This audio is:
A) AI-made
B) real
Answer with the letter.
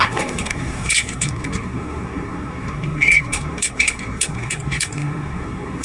A